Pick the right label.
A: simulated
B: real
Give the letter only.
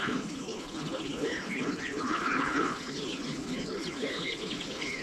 A